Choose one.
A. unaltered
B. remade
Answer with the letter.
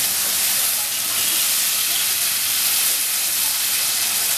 A